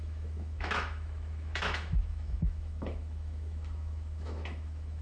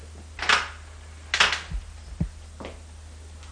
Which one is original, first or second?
second